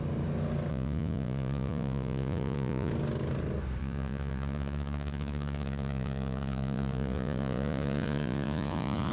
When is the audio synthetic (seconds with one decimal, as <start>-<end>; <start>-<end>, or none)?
0.7-2.9; 3.8-9.1